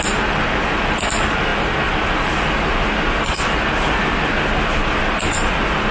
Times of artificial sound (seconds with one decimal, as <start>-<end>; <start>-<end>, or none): none